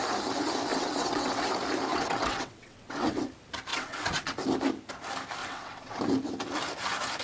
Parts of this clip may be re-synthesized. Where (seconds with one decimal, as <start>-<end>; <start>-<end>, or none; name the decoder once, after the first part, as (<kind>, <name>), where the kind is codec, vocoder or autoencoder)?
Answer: 0.7-1.5 (vocoder, WaveNeXt); 1.9-3.3; 3.7-4.4; 5.4-6.0